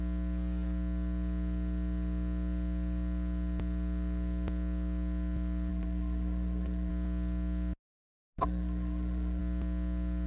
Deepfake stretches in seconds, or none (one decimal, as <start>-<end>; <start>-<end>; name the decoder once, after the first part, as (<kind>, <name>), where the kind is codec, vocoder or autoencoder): 5.7-6.9 (codec, SNAC); 8.4-9.4